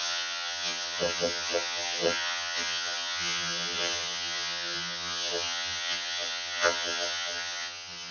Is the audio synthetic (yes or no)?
yes